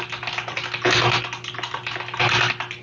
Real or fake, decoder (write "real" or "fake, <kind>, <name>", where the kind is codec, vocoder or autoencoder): real